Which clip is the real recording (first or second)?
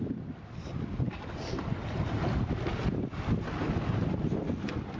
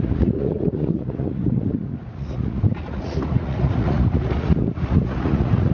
first